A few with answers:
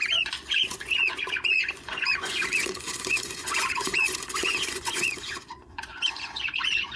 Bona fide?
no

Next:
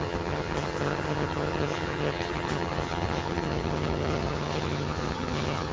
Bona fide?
no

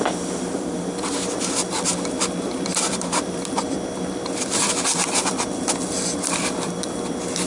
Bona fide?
no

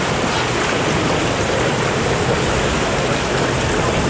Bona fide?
yes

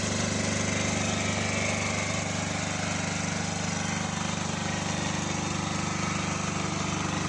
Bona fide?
yes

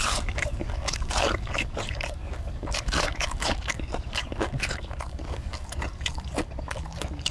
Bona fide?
no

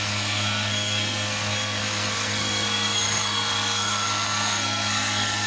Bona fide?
no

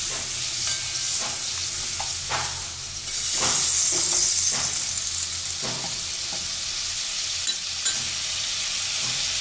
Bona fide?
yes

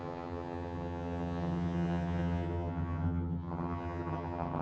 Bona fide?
no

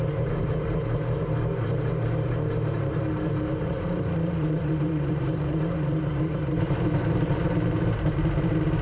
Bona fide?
no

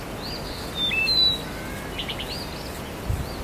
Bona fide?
yes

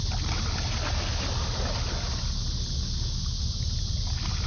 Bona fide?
yes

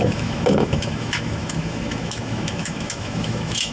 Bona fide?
no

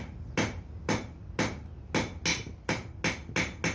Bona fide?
yes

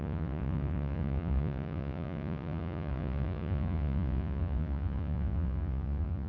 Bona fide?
no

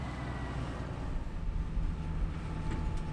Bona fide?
yes